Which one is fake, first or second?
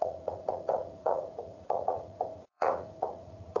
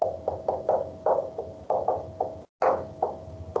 first